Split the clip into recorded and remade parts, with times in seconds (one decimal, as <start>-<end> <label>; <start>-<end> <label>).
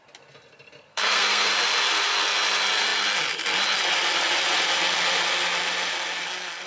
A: 0.0-0.9 recorded; 0.9-1.5 remade; 1.5-6.7 recorded